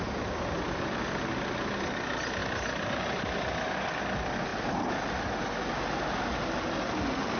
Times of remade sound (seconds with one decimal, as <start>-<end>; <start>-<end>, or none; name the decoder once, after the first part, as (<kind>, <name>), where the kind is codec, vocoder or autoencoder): none